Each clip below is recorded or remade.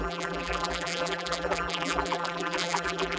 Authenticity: remade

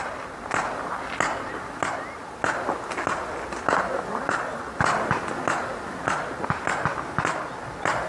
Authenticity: recorded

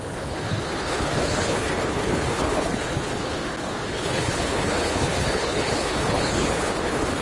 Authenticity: remade